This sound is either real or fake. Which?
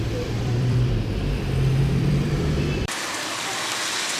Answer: fake